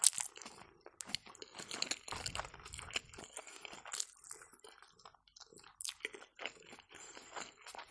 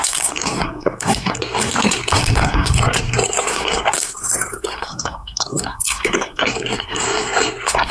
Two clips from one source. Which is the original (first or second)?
first